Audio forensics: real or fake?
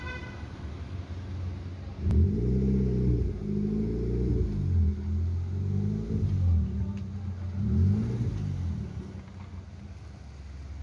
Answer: real